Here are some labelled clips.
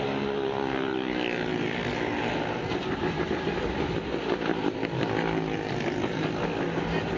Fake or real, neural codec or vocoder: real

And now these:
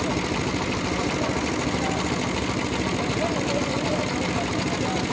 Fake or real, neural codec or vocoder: real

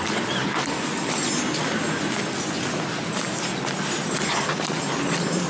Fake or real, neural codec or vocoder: real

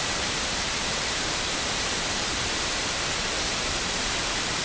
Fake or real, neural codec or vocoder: fake, vocoder, BigVGAN v2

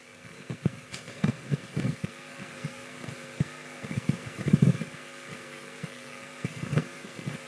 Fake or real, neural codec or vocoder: fake, codec, SNAC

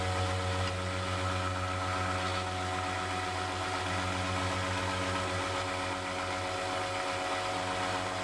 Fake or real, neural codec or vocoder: real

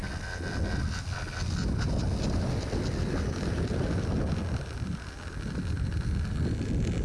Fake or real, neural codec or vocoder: real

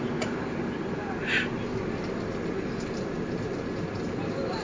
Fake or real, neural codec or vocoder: real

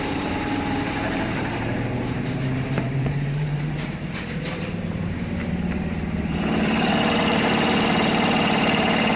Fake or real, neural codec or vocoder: fake, vocoder, BigVGAN v2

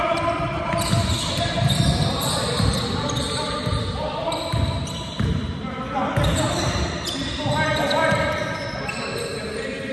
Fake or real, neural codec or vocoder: real